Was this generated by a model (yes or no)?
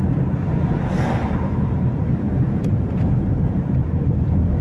no